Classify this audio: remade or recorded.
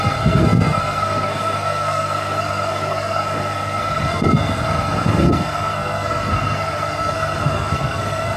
remade